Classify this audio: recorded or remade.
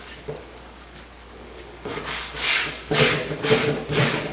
remade